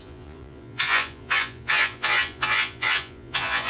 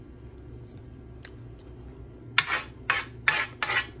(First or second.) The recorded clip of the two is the second